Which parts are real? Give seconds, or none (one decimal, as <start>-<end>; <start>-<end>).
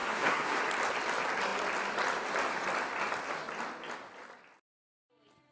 0.6-5.5